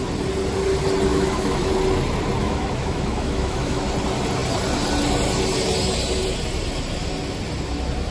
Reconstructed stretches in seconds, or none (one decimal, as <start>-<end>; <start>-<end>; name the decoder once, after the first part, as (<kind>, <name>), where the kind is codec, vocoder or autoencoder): 1.1-1.7 (autoencoder, DAC-VAE); 2.4-3.8